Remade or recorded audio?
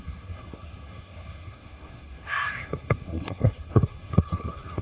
remade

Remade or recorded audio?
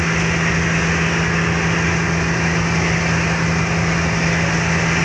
recorded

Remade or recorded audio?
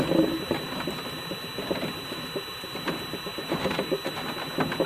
recorded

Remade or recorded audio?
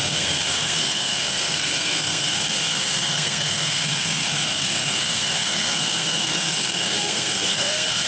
remade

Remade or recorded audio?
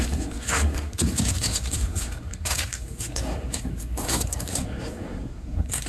remade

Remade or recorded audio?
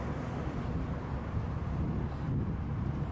recorded